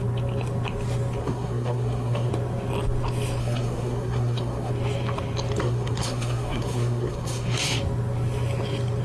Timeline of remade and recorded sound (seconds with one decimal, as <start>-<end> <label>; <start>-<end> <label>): 0.0-1.2 recorded; 1.2-2.3 remade; 2.3-3.4 recorded; 3.4-4.7 remade; 4.7-5.6 recorded; 5.6-7.8 remade; 7.8-9.0 recorded

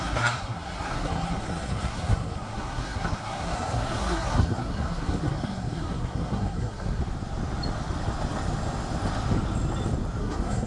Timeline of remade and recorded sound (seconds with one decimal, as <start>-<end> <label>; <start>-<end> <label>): 0.0-7.0 remade; 7.0-10.2 recorded; 10.2-10.7 remade

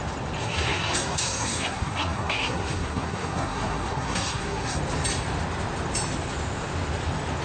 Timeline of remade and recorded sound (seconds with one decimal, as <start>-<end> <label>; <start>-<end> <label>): 0.0-0.4 recorded; 0.4-4.8 remade; 4.8-7.4 recorded